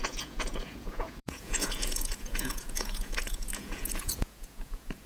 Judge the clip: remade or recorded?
remade